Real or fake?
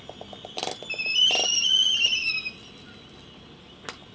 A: real